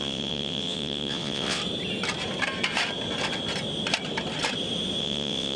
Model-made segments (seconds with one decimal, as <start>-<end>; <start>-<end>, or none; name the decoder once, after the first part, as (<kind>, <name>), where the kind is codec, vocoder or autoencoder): 0.0-1.6 (vocoder, WaveNeXt); 5.0-5.6